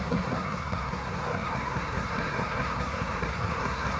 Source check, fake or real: fake